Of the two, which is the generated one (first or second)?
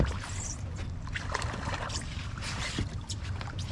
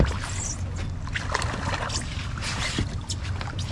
first